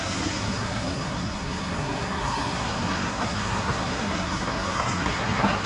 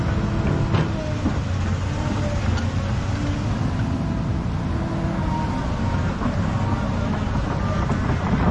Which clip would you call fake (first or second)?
first